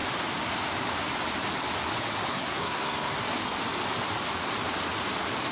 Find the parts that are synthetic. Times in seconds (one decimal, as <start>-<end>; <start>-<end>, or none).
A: 2.3-3.2